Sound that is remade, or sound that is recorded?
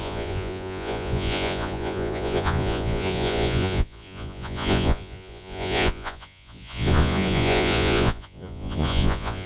remade